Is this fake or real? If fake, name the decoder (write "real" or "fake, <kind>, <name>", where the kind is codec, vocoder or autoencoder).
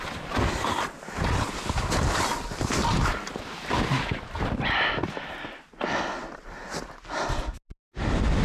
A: real